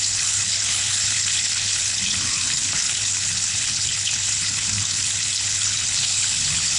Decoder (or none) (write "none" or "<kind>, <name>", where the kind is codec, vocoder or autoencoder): codec, HILCodec